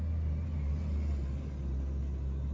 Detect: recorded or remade recorded